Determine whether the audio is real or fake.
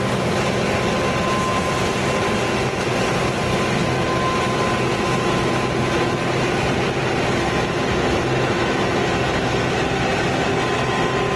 real